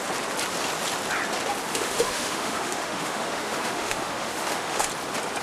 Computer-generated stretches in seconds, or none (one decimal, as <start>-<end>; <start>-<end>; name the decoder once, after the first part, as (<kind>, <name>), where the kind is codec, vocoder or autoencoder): 1.7-4.9 (autoencoder, DAC-VAE)

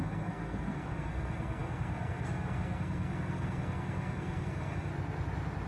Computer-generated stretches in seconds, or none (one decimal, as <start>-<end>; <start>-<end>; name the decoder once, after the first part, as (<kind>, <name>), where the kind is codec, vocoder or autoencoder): 0.0-4.9 (codec, SNAC)

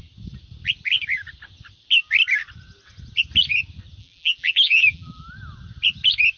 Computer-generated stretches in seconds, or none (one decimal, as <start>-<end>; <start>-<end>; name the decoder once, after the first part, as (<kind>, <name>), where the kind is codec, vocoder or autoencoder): 4.0-5.3 (vocoder, BigVGAN v2)

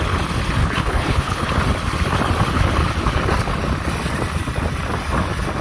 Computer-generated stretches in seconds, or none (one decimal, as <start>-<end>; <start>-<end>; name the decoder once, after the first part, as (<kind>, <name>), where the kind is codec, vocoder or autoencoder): 0.6-1.5 (codec, HILCodec)

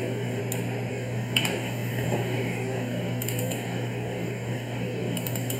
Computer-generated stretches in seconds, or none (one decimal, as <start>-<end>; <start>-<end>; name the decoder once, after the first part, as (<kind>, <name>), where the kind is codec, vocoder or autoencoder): 0.0-0.4 (codec, DAC); 0.9-5.6

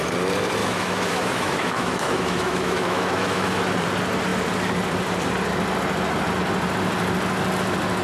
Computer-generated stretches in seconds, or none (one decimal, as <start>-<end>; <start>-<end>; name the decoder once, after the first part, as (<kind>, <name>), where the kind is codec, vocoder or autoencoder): 0.6-3.6 (autoencoder, DAC-VAE)

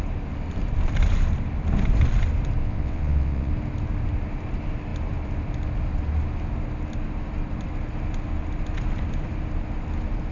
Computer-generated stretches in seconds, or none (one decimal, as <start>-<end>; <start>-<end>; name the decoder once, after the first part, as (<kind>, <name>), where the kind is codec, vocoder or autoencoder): 2.6-3.5 (vocoder, WaveNeXt)